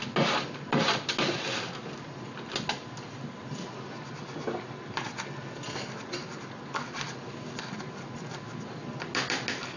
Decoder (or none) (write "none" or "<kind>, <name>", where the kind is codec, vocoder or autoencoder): none